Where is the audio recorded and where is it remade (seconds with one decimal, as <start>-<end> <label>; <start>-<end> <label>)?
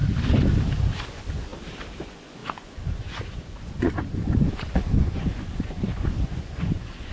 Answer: 0.0-0.8 recorded; 0.8-1.5 remade; 1.5-2.0 recorded; 2.0-7.1 remade